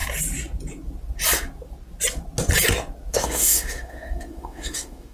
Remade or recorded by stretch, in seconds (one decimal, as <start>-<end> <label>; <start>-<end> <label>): 0.0-3.1 recorded; 3.1-5.1 remade